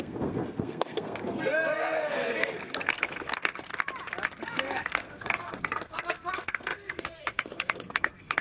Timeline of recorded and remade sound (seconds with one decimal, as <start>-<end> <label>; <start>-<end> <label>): 0.0-3.7 remade; 3.7-4.4 recorded; 4.4-8.4 remade